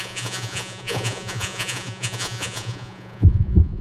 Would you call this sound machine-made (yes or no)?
yes